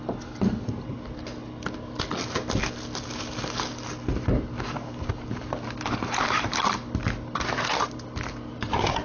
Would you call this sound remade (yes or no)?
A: no